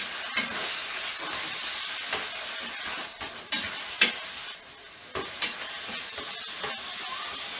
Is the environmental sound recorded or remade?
recorded